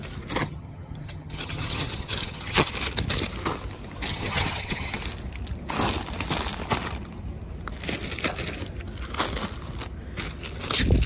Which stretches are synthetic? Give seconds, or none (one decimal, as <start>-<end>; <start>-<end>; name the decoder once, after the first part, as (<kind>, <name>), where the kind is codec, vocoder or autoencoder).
0.4-2.7 (vocoder, HiFi-GAN); 4.1-5.0